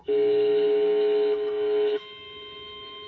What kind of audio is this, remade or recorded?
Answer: remade